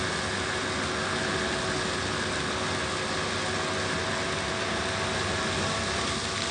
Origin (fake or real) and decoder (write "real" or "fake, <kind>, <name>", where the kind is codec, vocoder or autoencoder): real